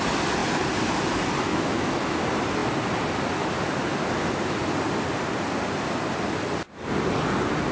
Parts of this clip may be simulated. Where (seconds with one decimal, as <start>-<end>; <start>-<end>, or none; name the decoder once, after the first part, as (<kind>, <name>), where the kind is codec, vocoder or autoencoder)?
1.5-2.2 (autoencoder, DAC-VAE)